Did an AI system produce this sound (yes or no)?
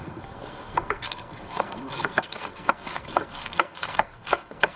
yes